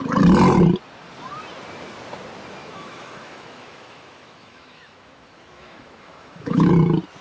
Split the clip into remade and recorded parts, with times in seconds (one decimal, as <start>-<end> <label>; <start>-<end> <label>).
0.0-2.6 recorded; 2.6-6.7 remade; 6.7-7.2 recorded